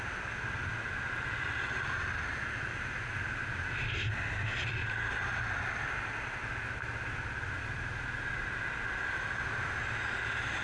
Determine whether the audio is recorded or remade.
recorded